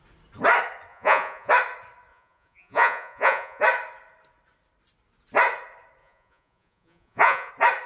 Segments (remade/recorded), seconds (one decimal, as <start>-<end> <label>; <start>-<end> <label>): 0.0-0.9 recorded; 0.9-1.5 remade; 1.5-2.1 recorded; 2.1-3.6 remade; 3.6-6.0 recorded; 6.0-7.5 remade; 7.5-7.9 recorded